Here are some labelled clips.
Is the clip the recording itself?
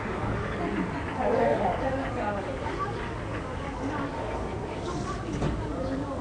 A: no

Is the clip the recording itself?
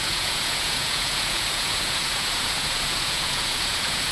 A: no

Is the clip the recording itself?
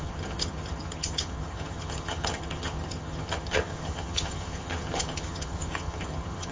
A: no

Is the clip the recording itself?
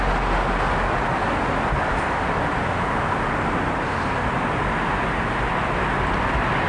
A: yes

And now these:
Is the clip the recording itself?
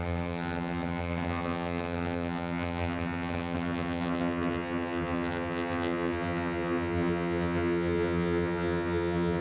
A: no